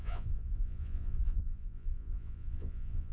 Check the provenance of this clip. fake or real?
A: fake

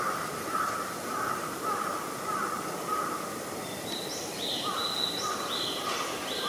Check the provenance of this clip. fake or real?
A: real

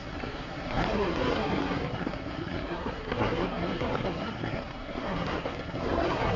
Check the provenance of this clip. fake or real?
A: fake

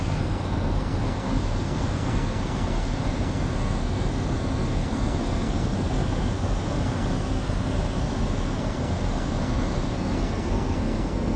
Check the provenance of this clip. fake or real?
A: fake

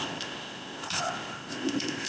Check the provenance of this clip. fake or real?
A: fake